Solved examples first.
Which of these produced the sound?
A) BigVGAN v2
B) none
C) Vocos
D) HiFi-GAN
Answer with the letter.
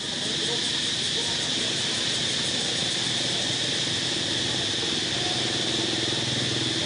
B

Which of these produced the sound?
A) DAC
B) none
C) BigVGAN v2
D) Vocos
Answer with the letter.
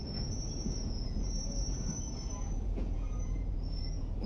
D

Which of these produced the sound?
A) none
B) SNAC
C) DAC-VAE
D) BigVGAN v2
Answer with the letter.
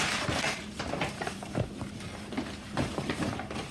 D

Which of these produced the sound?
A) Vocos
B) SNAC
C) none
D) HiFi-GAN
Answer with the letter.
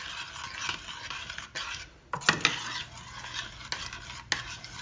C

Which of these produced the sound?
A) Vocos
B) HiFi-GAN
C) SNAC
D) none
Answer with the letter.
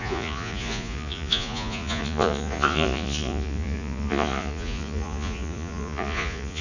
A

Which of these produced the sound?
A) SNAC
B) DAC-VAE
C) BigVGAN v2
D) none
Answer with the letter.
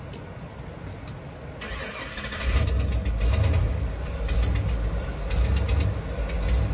D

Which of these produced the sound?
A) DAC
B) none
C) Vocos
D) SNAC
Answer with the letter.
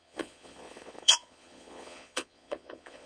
C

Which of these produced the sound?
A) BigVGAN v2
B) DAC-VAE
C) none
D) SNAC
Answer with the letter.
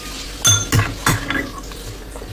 C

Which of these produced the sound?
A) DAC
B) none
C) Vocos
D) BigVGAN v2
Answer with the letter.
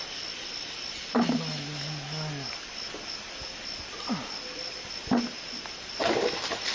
B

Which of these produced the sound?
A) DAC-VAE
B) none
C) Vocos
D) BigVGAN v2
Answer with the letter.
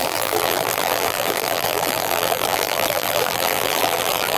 D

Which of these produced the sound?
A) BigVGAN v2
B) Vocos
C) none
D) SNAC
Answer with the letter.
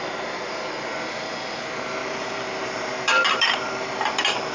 A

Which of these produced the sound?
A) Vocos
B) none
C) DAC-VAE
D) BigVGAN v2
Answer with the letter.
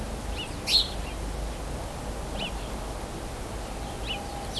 B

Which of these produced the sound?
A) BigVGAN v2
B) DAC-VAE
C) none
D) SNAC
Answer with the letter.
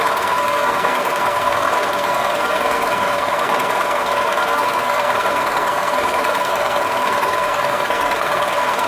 D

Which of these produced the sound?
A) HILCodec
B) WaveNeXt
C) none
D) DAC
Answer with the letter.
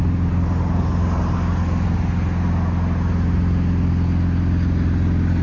C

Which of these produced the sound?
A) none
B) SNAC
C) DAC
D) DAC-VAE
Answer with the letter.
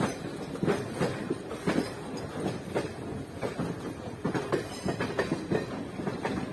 A